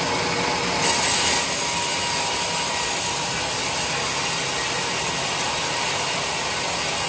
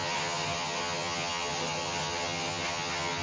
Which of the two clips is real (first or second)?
first